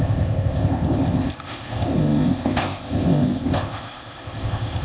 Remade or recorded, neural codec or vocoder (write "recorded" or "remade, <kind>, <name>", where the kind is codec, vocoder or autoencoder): remade, codec, ZipCodec